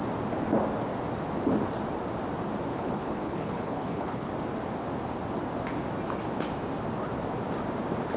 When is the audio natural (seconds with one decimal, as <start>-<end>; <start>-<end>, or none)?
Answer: 0.0-2.7; 4.3-8.2